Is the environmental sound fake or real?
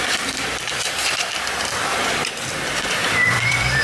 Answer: fake